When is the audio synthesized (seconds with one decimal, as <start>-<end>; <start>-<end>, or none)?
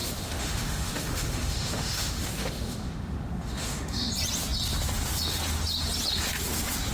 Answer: 0.0-4.1